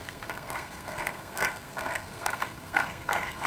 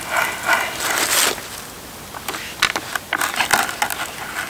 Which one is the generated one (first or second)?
first